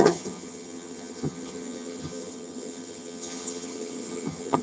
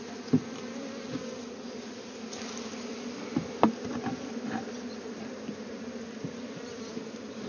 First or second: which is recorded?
second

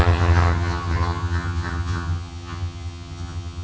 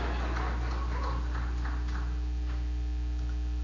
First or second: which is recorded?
second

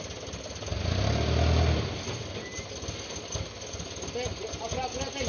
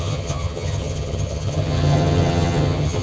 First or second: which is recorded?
first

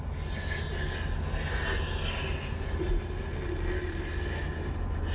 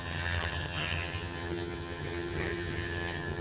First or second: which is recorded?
first